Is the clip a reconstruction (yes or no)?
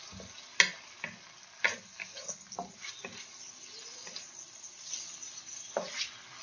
no